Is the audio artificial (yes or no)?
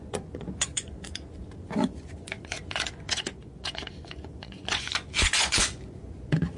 yes